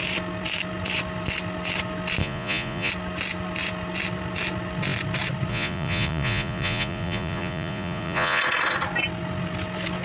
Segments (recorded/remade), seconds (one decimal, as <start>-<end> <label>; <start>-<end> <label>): 0.0-2.2 recorded; 2.2-2.9 remade; 2.9-5.5 recorded; 5.5-8.4 remade; 8.4-10.0 recorded